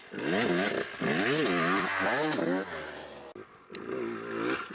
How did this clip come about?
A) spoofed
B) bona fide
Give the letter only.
B